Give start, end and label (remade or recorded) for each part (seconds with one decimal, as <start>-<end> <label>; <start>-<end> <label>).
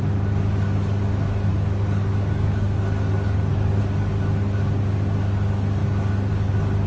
0.0-1.5 recorded; 1.5-3.8 remade; 3.8-6.9 recorded